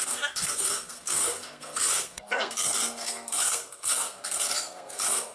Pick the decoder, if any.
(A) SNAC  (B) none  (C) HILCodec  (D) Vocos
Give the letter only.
A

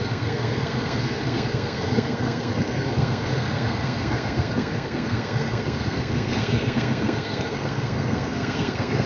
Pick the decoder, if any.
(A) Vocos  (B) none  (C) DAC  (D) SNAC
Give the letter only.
D